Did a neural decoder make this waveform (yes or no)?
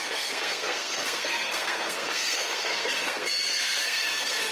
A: yes